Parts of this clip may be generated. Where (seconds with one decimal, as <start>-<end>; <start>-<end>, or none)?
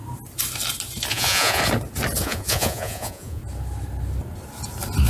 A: 1.1-1.6; 2.2-3.4